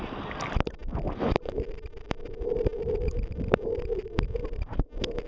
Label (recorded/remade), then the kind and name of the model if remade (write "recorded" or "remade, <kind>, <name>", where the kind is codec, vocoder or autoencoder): recorded